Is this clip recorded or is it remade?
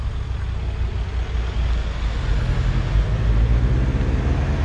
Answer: recorded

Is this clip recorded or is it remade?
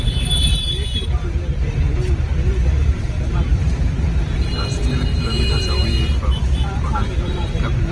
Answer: remade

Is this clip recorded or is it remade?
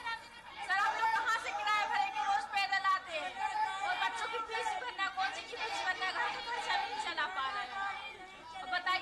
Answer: remade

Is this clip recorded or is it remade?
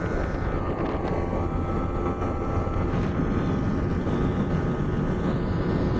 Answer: recorded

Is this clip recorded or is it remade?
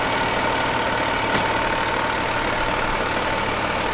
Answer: recorded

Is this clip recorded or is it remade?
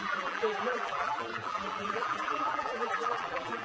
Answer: remade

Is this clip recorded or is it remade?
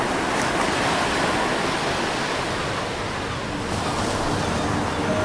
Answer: recorded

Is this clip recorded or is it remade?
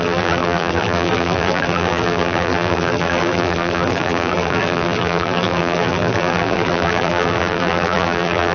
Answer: remade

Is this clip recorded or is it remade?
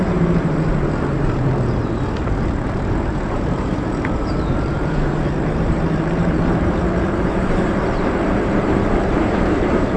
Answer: remade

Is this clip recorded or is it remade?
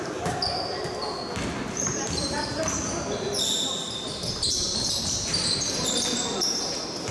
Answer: remade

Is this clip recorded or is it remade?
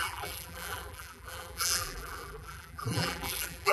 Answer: remade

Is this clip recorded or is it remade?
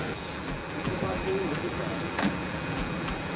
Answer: remade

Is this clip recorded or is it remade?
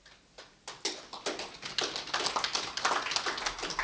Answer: recorded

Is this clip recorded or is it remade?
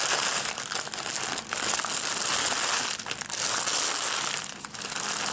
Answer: recorded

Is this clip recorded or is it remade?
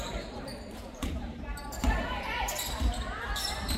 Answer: remade